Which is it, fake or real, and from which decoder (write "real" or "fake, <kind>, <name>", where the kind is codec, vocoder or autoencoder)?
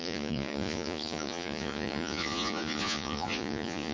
fake, vocoder, Vocos